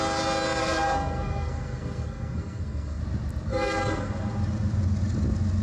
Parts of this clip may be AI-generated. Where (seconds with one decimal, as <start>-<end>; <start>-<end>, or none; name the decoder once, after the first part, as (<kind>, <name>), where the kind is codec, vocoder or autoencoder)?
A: 0.6-3.0 (codec, SNAC); 3.5-4.1